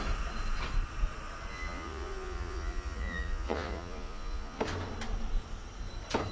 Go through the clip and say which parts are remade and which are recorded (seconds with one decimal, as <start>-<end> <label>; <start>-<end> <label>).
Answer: 0.0-1.5 recorded; 1.5-4.6 remade; 4.6-6.3 recorded